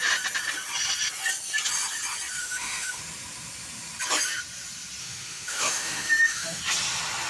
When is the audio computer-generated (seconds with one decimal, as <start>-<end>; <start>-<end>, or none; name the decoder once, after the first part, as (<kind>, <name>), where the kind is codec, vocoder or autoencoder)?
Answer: 2.4-3.0 (autoencoder, DAC-VAE); 5.0-6.6